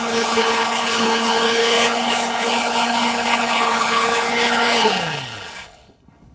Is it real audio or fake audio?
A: fake